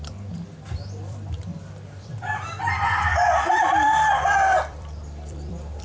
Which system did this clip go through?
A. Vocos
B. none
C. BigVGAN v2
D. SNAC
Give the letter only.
C